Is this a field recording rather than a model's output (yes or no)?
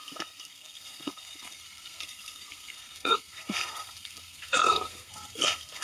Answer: no